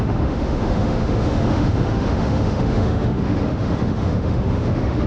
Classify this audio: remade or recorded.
remade